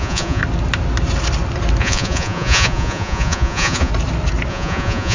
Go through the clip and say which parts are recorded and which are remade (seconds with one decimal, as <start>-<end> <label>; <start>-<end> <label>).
0.0-0.4 remade; 0.4-1.8 recorded; 1.8-3.9 remade; 3.9-4.5 recorded; 4.5-5.1 remade